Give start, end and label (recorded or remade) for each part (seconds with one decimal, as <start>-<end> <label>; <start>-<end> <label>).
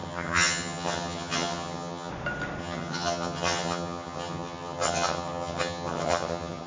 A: 0.0-2.1 remade; 2.1-2.6 recorded; 2.6-6.7 remade